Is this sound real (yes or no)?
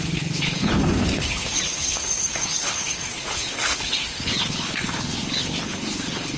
no